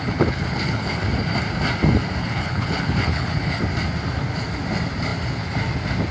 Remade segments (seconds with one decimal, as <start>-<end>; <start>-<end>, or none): 0.0-1.0; 2.2-3.6